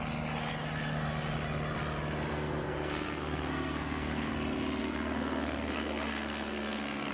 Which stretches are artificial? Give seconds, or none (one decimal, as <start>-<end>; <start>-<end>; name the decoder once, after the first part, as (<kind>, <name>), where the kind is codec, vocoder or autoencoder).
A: 2.3-4.3 (codec, SNAC); 4.8-7.1